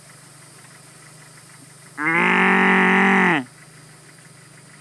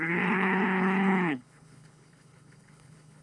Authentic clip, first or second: first